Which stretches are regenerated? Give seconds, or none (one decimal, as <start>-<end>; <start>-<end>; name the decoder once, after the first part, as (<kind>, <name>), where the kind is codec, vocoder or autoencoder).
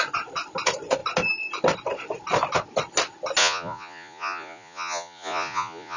3.4-6.0 (vocoder, Vocos)